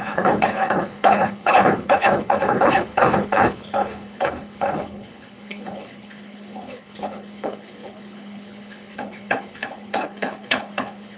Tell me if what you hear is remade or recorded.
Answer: remade